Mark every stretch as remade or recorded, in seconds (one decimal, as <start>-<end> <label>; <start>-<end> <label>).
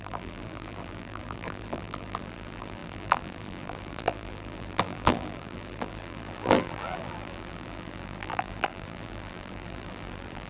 0.0-10.5 remade